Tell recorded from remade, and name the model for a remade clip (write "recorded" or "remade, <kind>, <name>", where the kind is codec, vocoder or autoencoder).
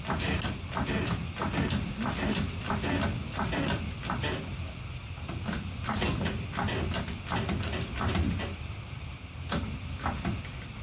recorded